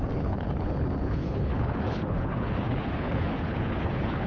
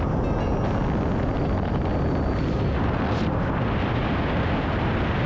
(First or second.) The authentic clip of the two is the second